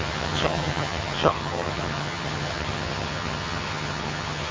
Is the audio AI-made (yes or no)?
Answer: yes